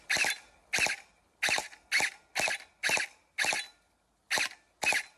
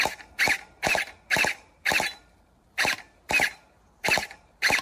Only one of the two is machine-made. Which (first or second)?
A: second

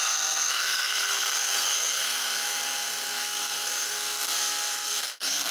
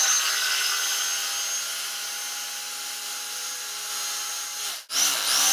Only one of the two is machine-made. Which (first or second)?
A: first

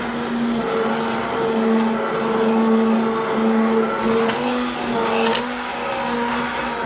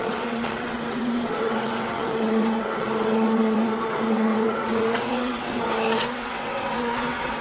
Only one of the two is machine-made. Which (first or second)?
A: second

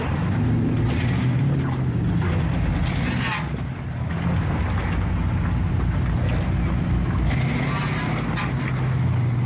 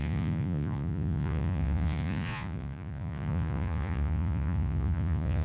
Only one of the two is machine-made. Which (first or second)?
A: second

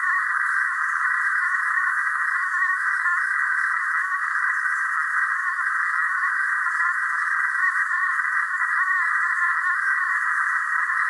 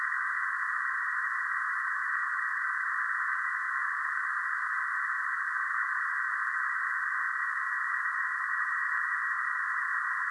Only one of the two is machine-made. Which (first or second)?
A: first